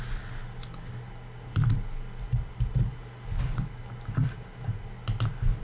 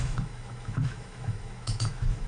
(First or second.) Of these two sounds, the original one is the first